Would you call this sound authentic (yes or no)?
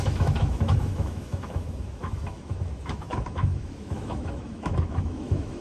no